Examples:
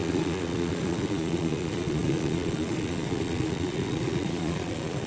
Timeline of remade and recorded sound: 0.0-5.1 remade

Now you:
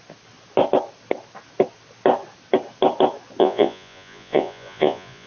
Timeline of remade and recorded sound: 0.0-3.4 recorded; 3.4-5.3 remade

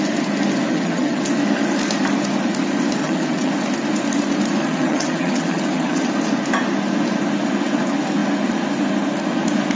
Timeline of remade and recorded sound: 0.0-0.7 recorded; 0.7-1.2 remade; 1.2-3.0 recorded; 3.0-3.5 remade; 3.5-4.6 recorded; 4.6-6.1 remade; 6.1-9.7 recorded

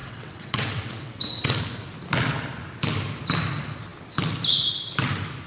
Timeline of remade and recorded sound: 0.0-1.6 remade; 1.6-5.5 recorded